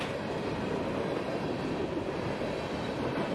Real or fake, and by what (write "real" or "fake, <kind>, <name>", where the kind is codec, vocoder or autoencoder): real